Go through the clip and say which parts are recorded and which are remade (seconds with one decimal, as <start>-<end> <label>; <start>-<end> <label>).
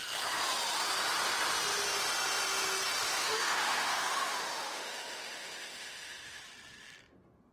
0.0-3.2 recorded; 3.2-6.4 remade; 6.4-7.5 recorded